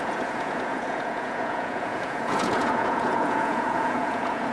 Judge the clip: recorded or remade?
remade